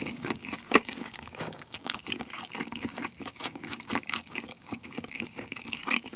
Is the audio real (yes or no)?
no